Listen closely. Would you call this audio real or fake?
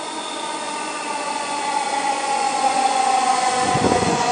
fake